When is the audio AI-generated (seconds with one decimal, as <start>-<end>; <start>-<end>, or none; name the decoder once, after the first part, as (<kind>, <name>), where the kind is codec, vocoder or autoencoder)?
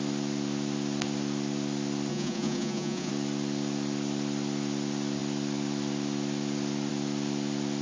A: 2.1-3.1 (vocoder, Vocos)